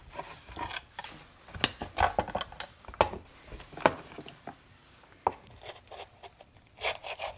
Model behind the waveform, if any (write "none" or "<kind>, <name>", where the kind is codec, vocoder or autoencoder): none